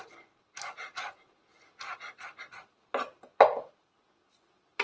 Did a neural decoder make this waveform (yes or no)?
no